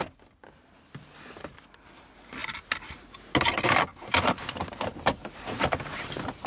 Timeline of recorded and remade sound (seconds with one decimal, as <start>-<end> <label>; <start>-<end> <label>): 0.0-6.5 recorded